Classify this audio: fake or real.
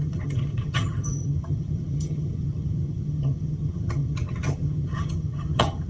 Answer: fake